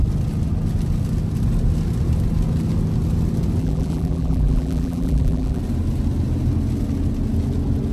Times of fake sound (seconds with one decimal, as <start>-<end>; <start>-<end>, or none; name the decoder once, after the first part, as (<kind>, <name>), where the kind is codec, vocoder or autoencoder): 3.6-5.6 (vocoder, BigVGAN v2)